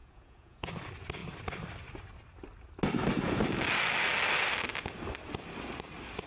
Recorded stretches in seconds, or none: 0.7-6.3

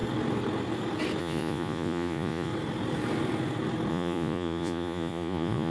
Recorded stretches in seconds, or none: 0.0-1.2; 2.5-3.9

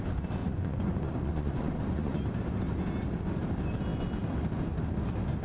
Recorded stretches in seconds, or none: 0.0-0.4; 2.2-5.4

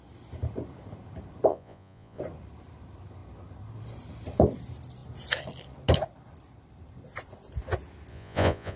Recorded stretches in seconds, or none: 0.0-1.5; 2.2-8.1

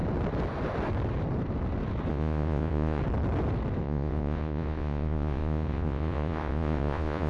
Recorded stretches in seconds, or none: 0.0-2.1; 3.0-3.8

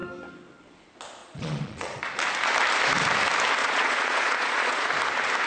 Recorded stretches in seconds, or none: 0.0-1.2; 2.0-3.6; 4.9-5.5